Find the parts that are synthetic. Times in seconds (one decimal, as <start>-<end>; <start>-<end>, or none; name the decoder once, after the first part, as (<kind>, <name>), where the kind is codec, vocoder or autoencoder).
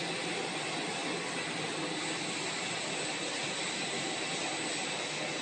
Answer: none